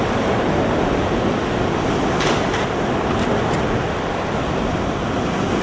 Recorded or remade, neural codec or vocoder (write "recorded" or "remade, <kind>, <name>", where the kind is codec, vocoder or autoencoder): recorded